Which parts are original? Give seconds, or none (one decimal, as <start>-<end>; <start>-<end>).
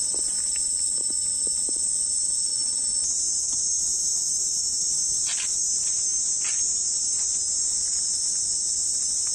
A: 0.0-9.3